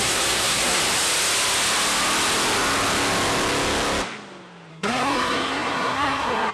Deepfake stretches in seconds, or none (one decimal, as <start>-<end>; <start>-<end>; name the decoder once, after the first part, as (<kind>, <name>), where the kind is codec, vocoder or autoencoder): 0.0-0.8 (codec, SNAC); 4.7-6.5